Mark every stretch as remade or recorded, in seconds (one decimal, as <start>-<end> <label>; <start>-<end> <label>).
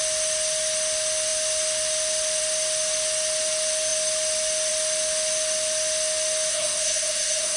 0.0-6.5 recorded; 6.5-7.6 remade